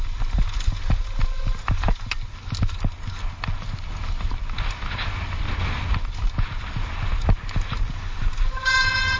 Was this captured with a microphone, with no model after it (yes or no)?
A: yes